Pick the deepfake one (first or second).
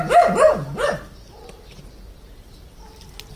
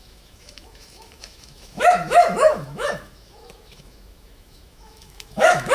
second